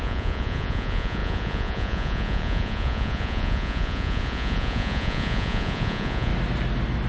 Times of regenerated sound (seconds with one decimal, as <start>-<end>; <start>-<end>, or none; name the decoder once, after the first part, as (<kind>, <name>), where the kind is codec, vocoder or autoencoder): 0.0-6.3 (vocoder, Vocos)